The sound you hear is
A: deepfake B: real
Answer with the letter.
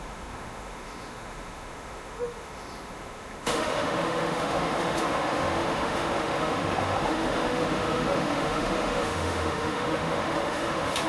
A